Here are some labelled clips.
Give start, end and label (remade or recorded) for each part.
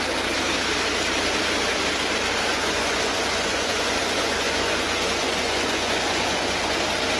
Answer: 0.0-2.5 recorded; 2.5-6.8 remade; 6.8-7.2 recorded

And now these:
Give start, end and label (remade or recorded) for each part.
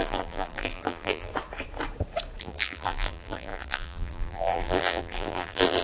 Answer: 0.0-1.3 remade; 1.3-2.4 recorded; 2.4-5.8 remade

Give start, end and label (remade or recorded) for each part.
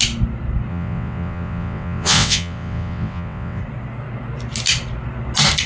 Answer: 0.0-0.7 recorded; 0.7-3.6 remade; 3.6-5.7 recorded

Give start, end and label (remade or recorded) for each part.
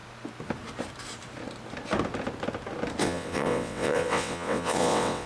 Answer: 0.0-3.0 recorded; 3.0-5.3 remade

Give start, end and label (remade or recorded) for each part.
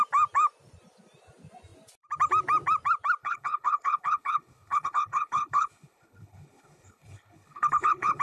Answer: 0.0-3.2 recorded; 3.2-8.2 remade